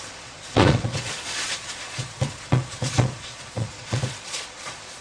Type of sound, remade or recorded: remade